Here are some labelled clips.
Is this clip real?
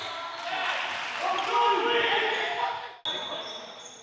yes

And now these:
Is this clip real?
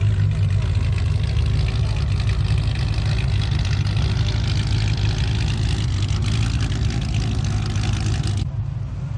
yes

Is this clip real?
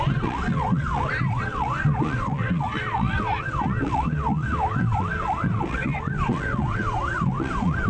no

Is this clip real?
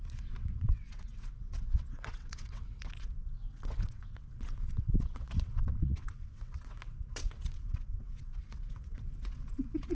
no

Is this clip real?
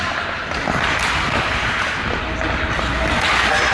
yes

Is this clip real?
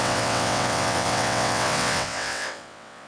no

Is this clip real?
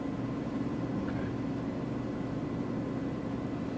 yes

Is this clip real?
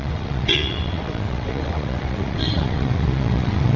no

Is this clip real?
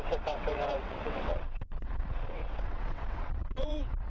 no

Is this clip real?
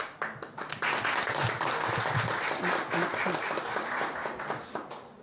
yes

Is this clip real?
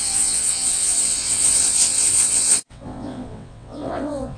no